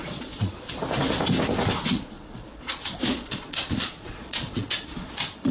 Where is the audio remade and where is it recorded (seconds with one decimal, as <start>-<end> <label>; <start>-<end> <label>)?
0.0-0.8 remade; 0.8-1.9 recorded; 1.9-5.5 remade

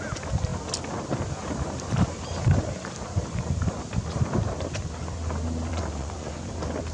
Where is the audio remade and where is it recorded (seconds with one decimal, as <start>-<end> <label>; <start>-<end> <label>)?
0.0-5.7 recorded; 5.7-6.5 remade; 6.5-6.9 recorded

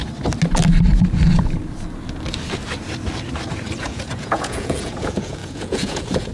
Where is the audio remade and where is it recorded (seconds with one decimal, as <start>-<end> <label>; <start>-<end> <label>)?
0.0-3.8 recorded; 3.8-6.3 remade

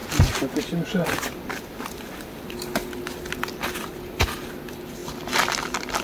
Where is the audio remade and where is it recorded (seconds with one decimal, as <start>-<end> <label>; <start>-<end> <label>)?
0.0-6.0 recorded

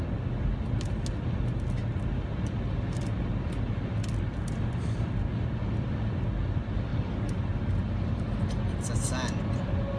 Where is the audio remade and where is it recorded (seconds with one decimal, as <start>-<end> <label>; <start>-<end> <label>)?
0.0-10.0 recorded